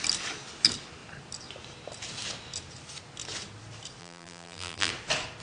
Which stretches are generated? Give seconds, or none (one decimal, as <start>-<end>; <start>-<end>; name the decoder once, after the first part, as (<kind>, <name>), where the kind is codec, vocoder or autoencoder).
4.0-4.9 (vocoder, BigVGAN v2)

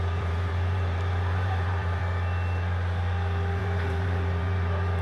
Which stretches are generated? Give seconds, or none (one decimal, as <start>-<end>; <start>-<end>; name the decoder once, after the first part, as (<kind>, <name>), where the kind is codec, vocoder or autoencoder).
0.0-2.0 (vocoder, BigVGAN v2); 3.6-5.0

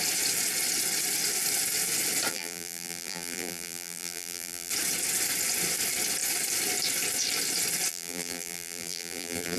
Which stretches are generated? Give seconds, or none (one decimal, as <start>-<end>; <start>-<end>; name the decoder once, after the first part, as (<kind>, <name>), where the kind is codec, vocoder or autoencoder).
2.3-4.7 (vocoder, BigVGAN v2); 7.9-9.6

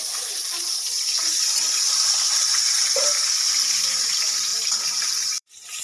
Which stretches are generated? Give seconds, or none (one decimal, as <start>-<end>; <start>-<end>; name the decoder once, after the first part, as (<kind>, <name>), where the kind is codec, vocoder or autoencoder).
0.0-5.8 (vocoder, BigVGAN v2)

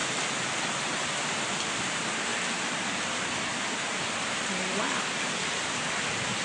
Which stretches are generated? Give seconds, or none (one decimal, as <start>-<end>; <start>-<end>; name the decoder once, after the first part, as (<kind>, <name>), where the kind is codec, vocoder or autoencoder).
1.2-2.3 (vocoder, BigVGAN v2)